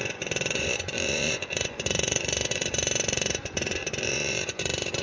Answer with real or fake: fake